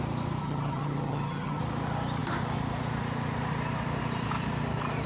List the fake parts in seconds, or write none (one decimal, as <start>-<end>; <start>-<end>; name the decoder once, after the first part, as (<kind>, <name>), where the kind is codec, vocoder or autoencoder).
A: 0.4-1.6 (vocoder, HiFi-GAN)